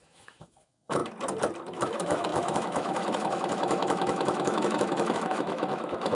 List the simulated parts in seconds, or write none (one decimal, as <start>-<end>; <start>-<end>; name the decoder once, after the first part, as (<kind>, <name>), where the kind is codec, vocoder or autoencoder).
0.0-1.0 (autoencoder, DAC-VAE); 1.7-6.1